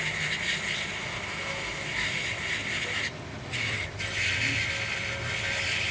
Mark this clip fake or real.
real